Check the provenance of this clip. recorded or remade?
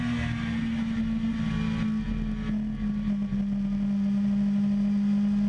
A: recorded